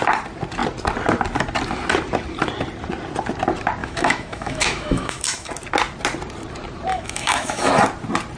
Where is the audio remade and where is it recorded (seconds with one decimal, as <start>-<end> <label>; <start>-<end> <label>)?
0.0-3.8 recorded; 3.8-5.5 remade; 5.5-6.9 recorded; 6.9-7.7 remade; 7.7-8.4 recorded